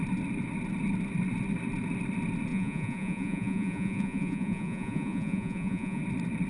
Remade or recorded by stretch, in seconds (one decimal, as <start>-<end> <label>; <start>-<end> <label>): 0.0-2.5 recorded; 2.5-6.0 remade; 6.0-6.5 recorded

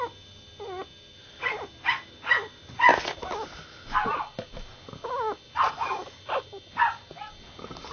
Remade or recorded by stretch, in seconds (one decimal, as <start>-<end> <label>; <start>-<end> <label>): 0.0-7.9 recorded

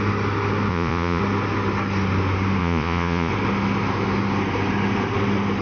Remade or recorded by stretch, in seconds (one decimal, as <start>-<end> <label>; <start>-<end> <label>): 0.0-0.7 recorded; 0.7-1.2 remade; 1.2-2.6 recorded; 2.6-3.3 remade; 3.3-5.6 recorded

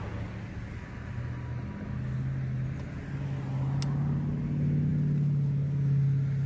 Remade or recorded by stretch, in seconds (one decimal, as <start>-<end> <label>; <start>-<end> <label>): 0.0-6.5 recorded

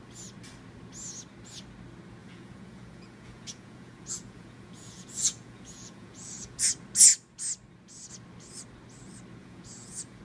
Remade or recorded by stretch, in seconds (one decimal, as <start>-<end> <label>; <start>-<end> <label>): 0.0-2.2 recorded; 2.2-6.6 remade; 6.6-9.4 recorded; 9.4-10.2 remade

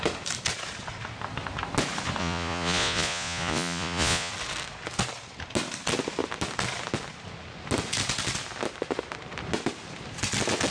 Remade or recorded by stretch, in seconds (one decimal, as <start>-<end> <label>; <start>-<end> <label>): 0.0-2.2 recorded; 2.2-4.3 remade; 4.3-10.7 recorded

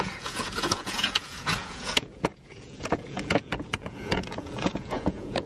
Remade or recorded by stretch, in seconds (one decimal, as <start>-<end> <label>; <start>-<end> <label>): 0.0-5.5 remade